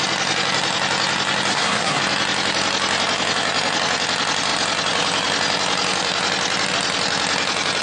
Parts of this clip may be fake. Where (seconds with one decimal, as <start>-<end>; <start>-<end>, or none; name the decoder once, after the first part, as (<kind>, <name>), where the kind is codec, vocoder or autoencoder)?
1.5-2.0 (codec, SNAC)